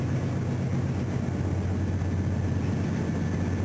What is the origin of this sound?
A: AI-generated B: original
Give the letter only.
B